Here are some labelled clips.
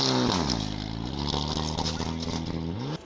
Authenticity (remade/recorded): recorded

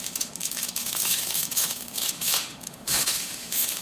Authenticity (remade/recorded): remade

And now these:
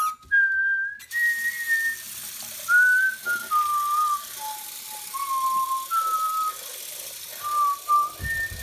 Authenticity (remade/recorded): recorded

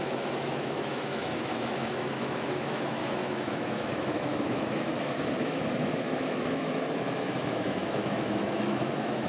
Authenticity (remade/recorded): remade